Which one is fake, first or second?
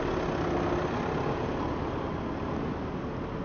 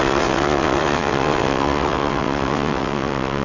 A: second